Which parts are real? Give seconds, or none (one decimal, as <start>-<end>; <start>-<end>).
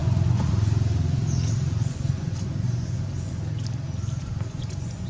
0.5-1.8; 3.3-4.2